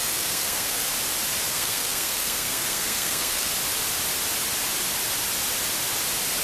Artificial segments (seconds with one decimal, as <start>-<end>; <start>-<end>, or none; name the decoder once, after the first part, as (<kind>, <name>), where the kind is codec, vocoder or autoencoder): 0.0-0.9 (codec, SNAC); 1.5-3.5